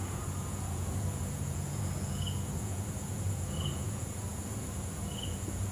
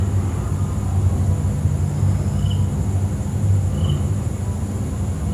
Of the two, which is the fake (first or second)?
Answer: first